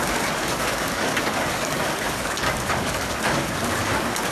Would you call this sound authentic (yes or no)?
no